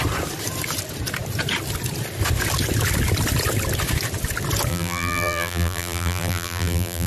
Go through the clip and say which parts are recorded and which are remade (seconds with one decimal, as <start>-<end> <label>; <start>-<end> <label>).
0.0-4.7 recorded; 4.7-7.1 remade